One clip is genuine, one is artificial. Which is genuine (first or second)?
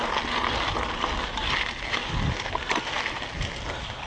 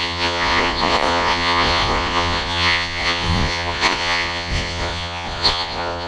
first